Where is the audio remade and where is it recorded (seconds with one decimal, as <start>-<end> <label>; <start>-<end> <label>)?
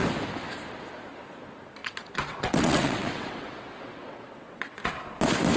0.0-1.8 recorded; 1.8-4.8 remade; 4.8-5.6 recorded